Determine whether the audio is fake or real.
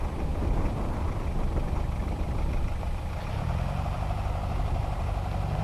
fake